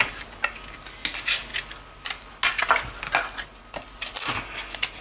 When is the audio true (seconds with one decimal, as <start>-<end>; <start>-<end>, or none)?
0.0-5.0